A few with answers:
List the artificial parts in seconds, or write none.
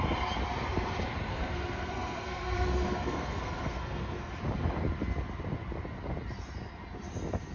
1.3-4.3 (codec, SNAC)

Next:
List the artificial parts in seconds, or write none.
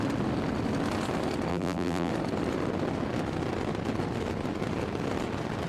1.5-2.1 (vocoder, BigVGAN v2)